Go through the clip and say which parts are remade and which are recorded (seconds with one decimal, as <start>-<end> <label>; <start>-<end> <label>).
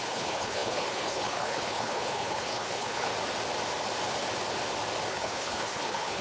0.0-3.1 remade; 3.1-5.1 recorded; 5.1-6.2 remade